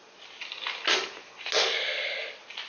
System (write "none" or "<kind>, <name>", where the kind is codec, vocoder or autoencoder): none